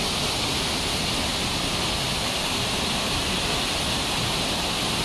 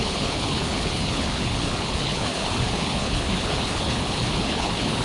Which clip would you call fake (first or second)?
second